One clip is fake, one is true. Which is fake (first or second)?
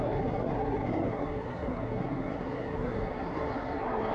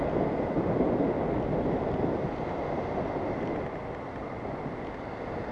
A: first